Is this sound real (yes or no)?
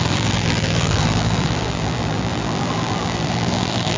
no